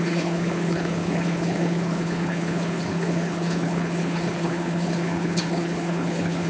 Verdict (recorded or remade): remade